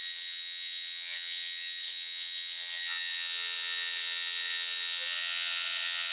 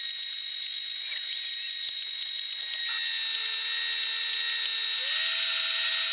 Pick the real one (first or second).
second